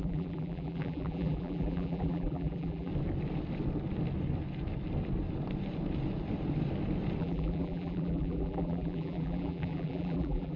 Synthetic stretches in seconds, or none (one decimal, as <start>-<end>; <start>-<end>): 0.0-2.9; 7.2-10.6

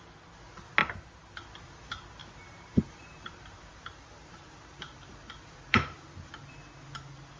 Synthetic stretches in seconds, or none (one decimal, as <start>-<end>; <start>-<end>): 0.8-1.4; 2.2-6.6

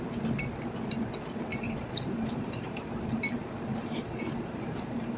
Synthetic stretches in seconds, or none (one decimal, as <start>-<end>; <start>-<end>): 1.5-2.9; 3.8-5.2

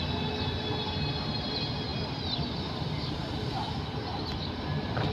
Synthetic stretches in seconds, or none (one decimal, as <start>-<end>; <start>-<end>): 1.9-3.7

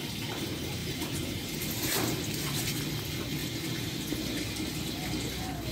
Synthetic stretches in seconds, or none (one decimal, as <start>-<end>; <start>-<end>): 0.8-2.8; 3.4-4.4

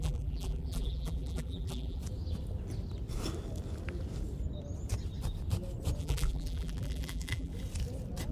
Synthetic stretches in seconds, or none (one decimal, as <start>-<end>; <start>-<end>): 0.0-2.0; 6.0-7.5

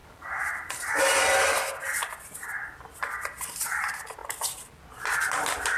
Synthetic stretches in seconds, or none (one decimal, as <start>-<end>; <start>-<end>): 0.0-1.0